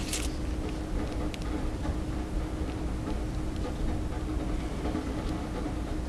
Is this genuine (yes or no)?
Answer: yes